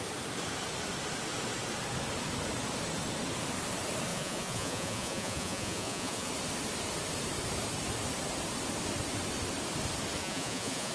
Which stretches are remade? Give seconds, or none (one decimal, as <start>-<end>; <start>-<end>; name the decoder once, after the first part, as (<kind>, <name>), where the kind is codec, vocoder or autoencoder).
4.1-6.3 (vocoder, Vocos); 10.2-10.9